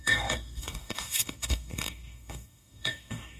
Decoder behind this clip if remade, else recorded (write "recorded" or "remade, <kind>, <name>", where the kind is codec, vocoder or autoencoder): remade, codec, DAC